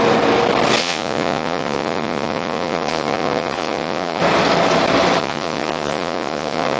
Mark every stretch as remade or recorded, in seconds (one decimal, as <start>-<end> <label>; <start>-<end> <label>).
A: 0.0-0.8 recorded; 0.8-4.2 remade; 4.2-5.2 recorded; 5.2-6.8 remade

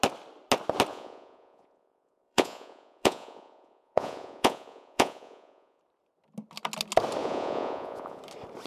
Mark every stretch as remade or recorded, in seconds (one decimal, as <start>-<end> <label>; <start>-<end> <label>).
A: 0.0-0.9 recorded; 0.9-5.8 remade; 5.8-7.2 recorded; 7.2-8.2 remade; 8.2-8.7 recorded